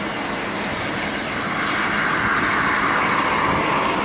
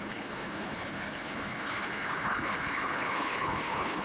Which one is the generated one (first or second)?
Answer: second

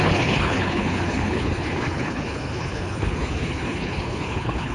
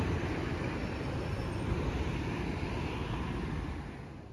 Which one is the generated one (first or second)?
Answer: first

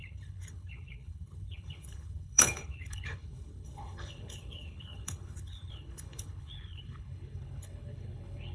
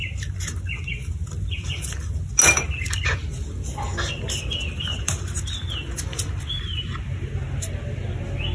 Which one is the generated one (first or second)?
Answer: first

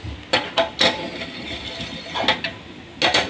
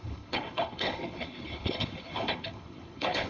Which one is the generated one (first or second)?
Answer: second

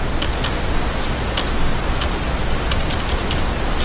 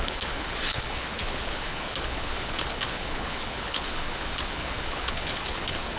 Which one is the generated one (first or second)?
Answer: second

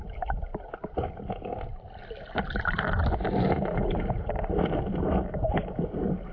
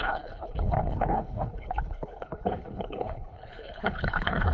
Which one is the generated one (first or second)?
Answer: second